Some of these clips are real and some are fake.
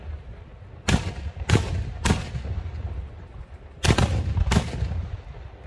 real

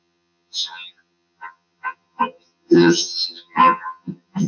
fake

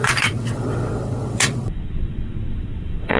fake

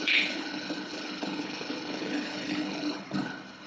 fake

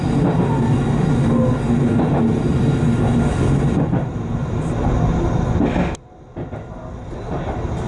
real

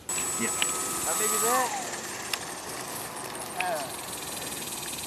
real